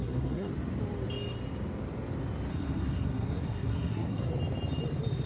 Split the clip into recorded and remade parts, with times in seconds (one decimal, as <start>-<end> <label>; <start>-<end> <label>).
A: 0.0-0.5 remade; 0.5-2.5 recorded; 2.5-4.3 remade; 4.3-5.3 recorded